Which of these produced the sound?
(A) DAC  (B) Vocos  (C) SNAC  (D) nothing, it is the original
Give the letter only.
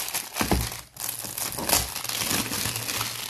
D